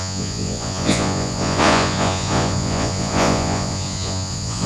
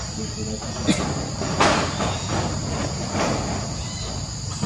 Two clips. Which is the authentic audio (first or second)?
second